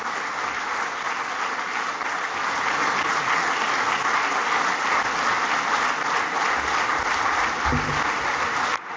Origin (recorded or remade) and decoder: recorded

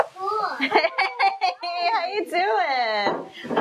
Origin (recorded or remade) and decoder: recorded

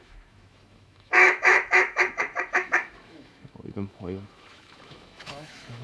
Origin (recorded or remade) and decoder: remade, autoencoder, DAC-VAE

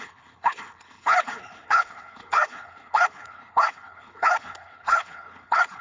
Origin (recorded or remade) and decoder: remade, codec, HILCodec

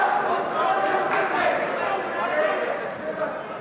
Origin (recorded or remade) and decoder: recorded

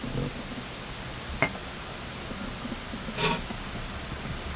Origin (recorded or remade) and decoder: recorded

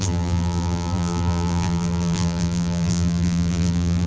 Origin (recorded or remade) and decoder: remade, vocoder, BigVGAN v2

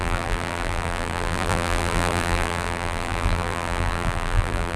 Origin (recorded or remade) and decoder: remade, vocoder, BigVGAN v2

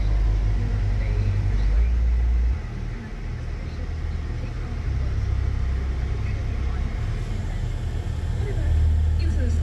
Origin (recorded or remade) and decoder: recorded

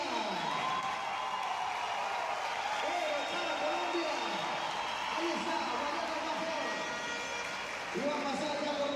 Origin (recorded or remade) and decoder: recorded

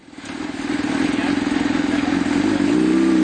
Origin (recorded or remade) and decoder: recorded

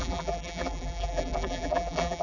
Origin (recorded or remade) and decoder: remade, vocoder, BigVGAN v2